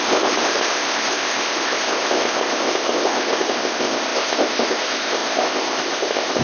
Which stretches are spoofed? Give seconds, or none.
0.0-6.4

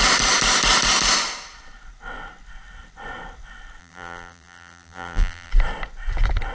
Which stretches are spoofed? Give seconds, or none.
3.8-5.5

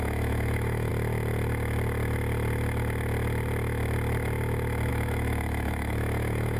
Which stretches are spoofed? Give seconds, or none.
0.0-0.9; 4.9-6.6

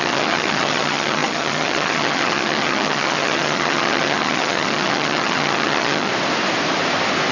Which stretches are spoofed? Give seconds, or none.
0.0-6.1

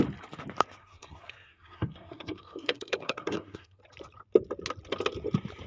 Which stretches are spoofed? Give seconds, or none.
0.8-3.8

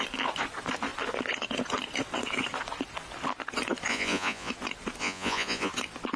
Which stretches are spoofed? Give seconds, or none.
3.9-4.5; 5.0-5.7

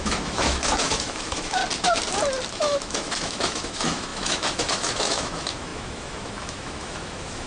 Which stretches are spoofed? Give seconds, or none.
0.0-1.6; 2.5-7.5